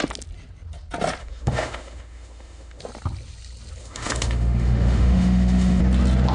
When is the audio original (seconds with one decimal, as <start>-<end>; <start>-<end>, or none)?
0.0-1.2; 2.8-3.8; 5.8-6.3